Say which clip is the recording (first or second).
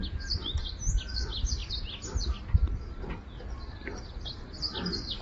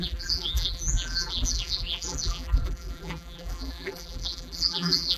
first